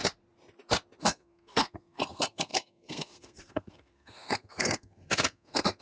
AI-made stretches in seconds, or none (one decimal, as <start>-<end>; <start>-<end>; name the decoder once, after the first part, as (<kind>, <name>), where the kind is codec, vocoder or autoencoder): 1.0-5.8 (codec, SNAC)